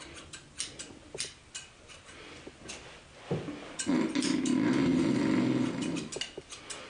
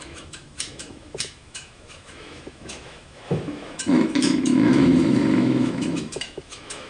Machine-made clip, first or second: second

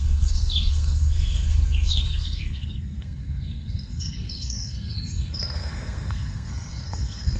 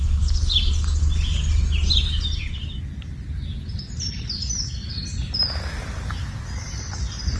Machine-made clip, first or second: first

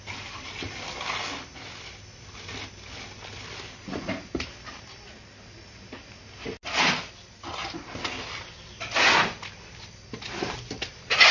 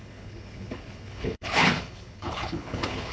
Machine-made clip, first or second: second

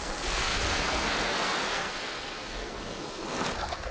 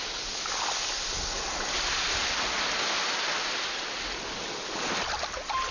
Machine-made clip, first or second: first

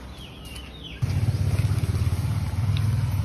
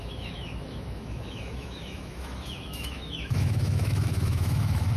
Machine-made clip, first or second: second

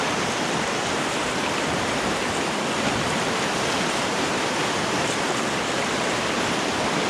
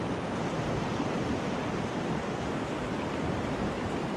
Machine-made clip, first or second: first